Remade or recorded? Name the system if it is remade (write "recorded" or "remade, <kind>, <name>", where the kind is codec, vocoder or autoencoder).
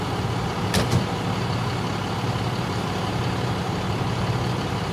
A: recorded